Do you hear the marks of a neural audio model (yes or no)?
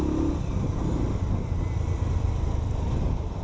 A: no